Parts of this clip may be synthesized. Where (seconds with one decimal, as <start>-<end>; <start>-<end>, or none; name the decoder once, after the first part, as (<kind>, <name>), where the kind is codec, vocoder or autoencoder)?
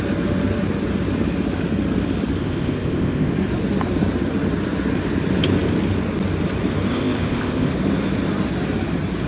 2.4-3.3 (codec, ZipCodec); 6.9-7.7